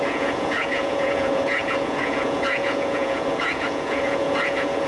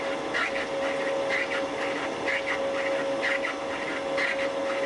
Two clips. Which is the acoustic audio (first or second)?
second